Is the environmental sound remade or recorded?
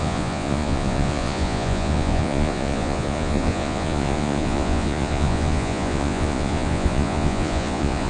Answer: remade